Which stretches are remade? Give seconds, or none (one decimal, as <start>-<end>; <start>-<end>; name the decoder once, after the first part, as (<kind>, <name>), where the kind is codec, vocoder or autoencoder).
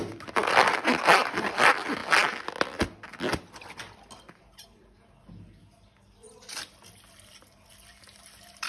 none